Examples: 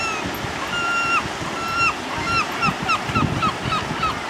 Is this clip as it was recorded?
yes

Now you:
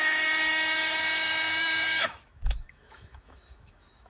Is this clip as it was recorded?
no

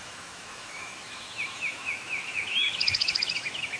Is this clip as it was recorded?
no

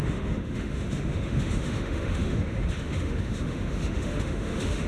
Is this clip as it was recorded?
no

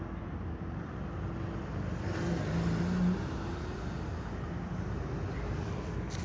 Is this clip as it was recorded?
yes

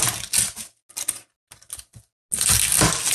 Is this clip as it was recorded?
yes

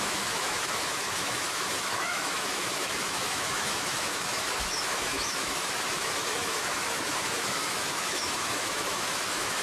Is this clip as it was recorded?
no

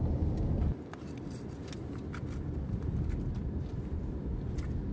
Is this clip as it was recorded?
yes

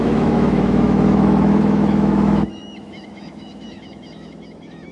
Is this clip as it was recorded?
no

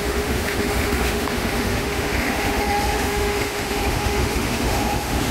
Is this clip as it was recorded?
no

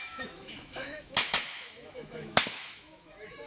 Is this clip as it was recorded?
no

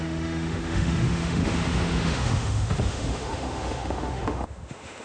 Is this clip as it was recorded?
no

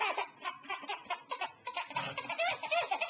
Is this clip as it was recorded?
yes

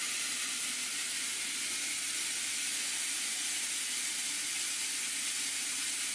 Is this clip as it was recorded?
yes